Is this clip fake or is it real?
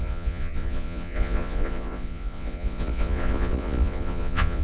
fake